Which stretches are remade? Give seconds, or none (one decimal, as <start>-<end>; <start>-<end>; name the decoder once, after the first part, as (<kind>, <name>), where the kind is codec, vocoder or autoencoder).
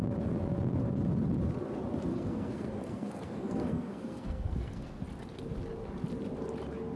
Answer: 2.1-5.0 (codec, SNAC)